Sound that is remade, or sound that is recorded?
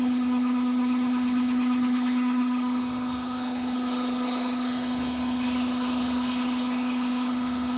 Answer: remade